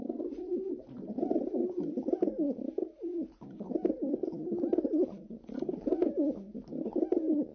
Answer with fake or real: real